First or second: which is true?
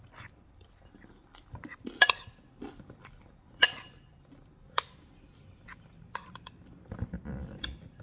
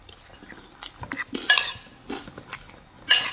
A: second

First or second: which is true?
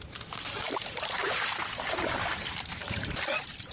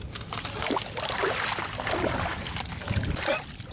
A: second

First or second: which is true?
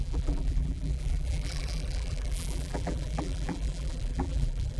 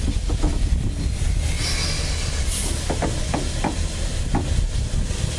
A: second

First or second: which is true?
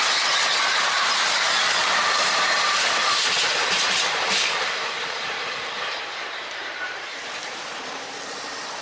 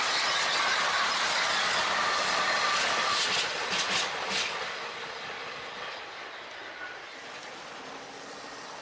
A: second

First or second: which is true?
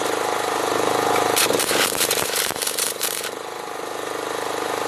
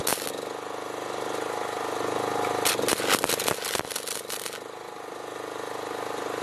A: second